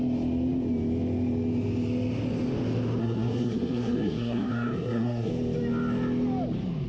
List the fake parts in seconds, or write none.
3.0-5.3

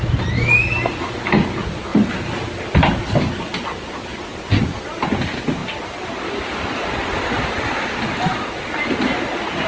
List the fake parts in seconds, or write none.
none

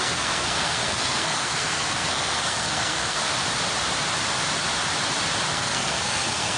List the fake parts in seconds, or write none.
0.0-3.3; 5.5-6.6